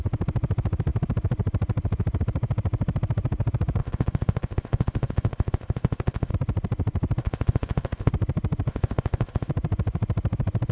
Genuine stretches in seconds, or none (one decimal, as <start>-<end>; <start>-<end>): 0.0-3.8; 6.3-7.2; 8.1-8.7; 9.5-10.7